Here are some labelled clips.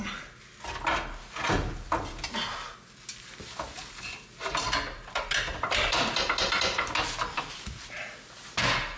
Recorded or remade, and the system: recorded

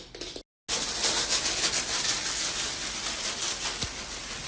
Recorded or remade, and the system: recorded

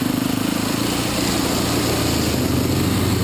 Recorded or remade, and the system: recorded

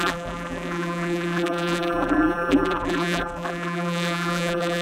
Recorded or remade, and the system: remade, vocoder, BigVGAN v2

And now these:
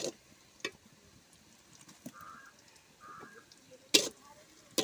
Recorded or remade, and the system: recorded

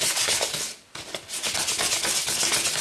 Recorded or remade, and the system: recorded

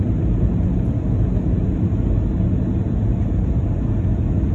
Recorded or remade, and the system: recorded